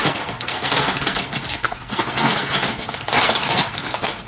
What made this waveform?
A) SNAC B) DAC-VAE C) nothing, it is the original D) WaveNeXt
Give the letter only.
A